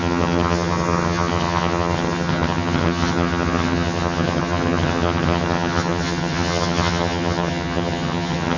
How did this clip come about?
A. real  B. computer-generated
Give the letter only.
B